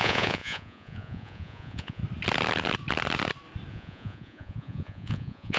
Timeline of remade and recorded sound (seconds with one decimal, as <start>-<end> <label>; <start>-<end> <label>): 0.0-2.0 remade; 2.0-3.7 recorded; 3.7-5.6 remade